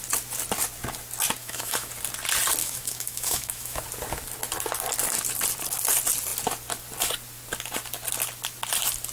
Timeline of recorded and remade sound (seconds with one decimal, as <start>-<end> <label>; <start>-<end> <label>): 0.0-1.4 recorded; 1.4-1.9 remade; 1.9-2.6 recorded; 2.6-3.8 remade; 3.8-9.1 recorded